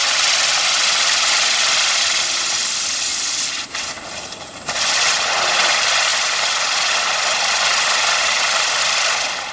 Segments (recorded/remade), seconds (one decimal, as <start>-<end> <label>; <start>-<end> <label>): 0.0-9.5 recorded